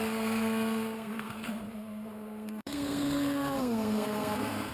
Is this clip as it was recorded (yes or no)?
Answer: no